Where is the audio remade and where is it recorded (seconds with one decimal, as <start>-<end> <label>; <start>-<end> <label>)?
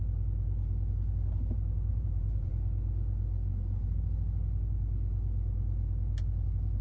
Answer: 0.0-1.9 recorded; 1.9-2.5 remade; 2.5-6.8 recorded